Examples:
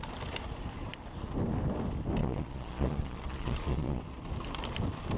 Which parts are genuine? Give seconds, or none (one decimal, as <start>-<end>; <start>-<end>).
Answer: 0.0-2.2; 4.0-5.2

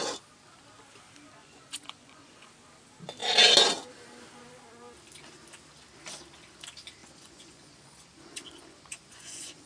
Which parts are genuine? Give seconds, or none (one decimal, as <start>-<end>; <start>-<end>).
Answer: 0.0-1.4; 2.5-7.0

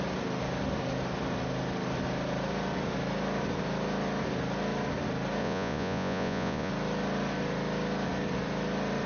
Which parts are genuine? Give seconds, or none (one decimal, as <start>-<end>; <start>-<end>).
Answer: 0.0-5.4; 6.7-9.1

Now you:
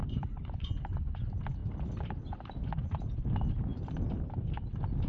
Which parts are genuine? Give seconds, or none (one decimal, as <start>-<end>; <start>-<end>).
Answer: 1.1-5.1